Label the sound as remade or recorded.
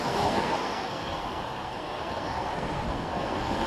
remade